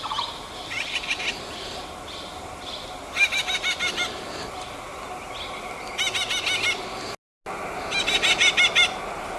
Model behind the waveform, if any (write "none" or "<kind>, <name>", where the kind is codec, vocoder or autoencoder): none